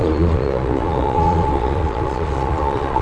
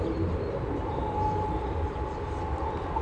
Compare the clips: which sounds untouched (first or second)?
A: second